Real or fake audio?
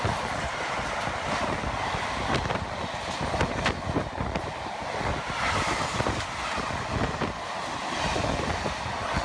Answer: real